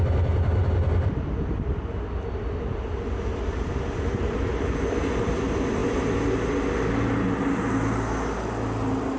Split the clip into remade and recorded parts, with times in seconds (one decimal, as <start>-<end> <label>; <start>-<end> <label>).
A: 0.0-9.2 recorded